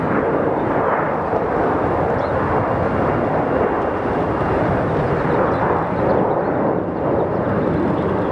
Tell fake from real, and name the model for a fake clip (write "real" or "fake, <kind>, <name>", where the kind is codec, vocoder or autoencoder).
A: real